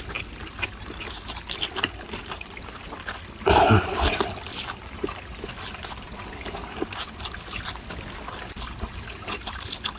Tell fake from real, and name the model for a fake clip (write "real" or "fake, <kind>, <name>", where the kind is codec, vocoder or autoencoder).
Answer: real